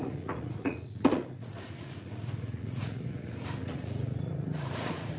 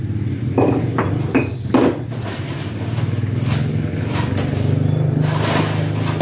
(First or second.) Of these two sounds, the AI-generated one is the first